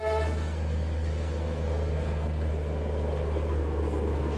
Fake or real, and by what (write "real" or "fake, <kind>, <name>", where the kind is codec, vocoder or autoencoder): fake, codec, SNAC